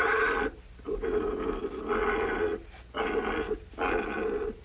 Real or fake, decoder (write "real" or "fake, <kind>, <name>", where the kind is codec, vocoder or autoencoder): real